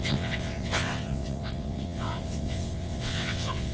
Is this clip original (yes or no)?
no